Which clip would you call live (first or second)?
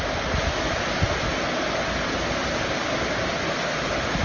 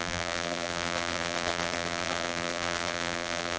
first